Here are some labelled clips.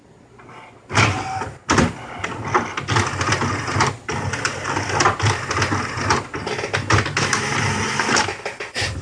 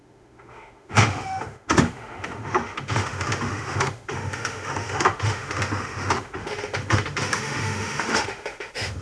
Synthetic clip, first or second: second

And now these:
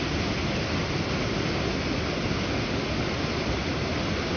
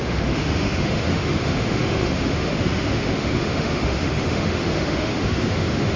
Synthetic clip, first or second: second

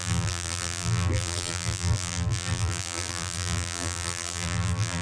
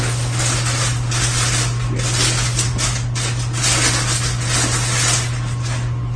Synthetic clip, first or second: first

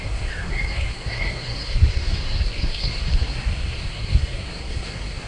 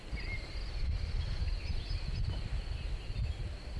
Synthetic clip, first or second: first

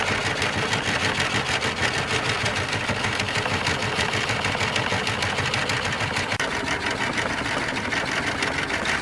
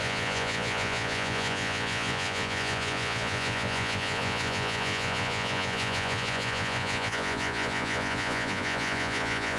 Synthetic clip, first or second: second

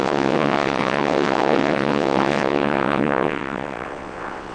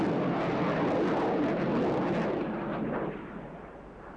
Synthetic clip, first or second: first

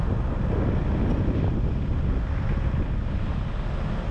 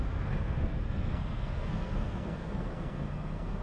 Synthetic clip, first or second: second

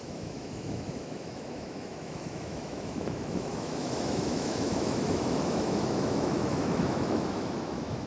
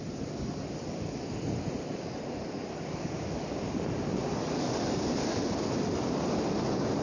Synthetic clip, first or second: first